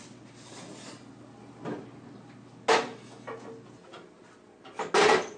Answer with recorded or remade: recorded